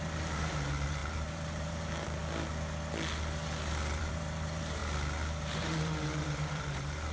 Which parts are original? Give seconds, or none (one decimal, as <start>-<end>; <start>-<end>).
2.2-4.0; 4.8-5.4